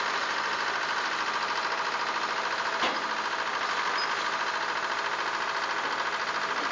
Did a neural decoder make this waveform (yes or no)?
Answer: no